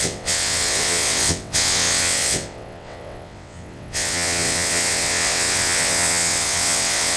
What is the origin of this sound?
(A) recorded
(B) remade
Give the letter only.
B